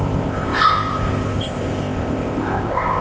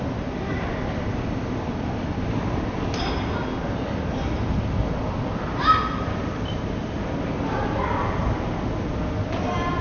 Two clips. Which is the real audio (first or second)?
second